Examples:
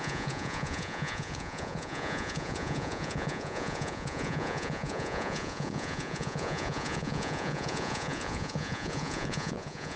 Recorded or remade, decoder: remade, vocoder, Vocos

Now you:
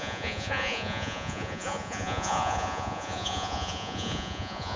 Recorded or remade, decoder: remade, vocoder, Vocos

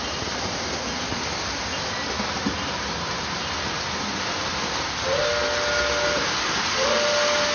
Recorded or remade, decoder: recorded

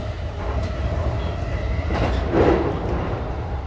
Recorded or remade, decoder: recorded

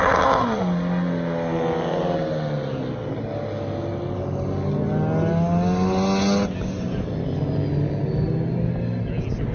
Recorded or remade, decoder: recorded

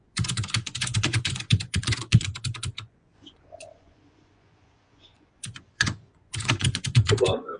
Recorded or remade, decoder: remade, vocoder, Vocos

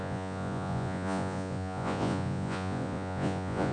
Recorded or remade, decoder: remade, vocoder, Vocos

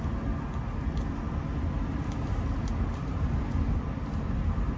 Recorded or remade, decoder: recorded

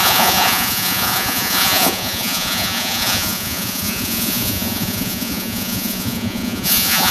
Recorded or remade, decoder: remade, vocoder, Vocos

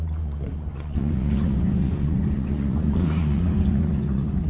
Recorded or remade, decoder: remade, vocoder, Vocos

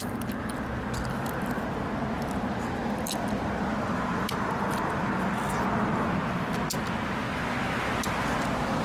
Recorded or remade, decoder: recorded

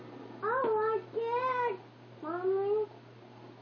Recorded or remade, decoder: recorded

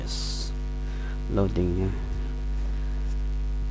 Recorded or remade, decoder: recorded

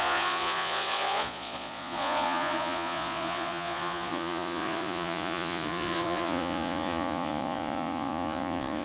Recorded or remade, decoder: remade, vocoder, Vocos